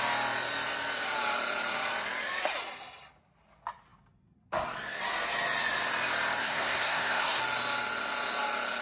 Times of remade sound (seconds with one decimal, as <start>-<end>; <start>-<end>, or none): 6.4-7.4